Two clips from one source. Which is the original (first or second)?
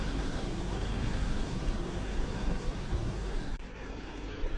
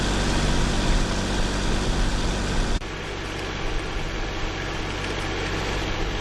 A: second